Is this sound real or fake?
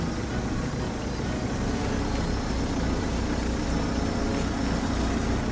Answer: real